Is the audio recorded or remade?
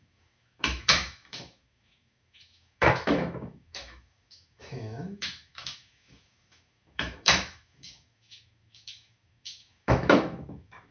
remade